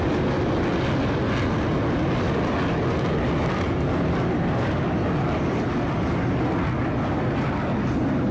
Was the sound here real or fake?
real